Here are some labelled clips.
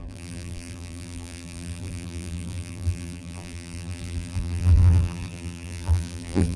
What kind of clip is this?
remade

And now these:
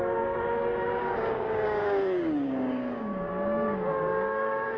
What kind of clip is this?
remade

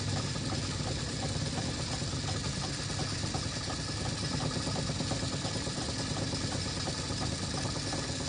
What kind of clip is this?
recorded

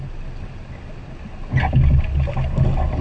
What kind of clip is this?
recorded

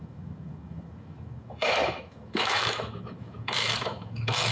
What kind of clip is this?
remade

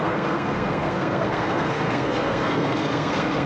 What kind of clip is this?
remade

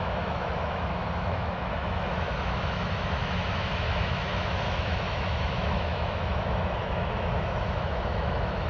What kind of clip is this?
remade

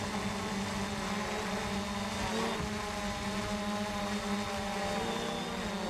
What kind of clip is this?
recorded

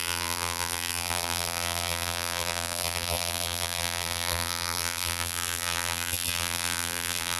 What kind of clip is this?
remade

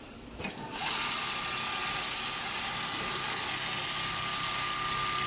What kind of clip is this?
recorded